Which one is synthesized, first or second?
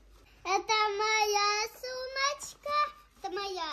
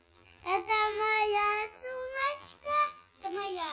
second